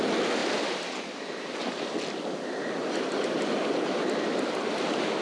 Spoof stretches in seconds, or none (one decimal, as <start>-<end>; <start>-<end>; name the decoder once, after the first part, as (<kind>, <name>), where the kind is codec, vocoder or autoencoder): none